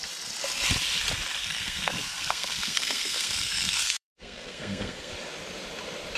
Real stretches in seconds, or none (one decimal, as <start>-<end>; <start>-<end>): 0.0-1.4; 5.1-6.2